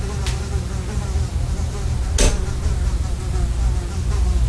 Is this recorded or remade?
recorded